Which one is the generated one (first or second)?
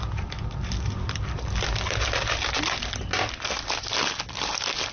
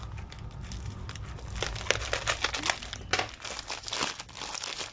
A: first